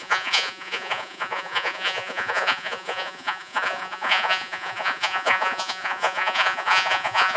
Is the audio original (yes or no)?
no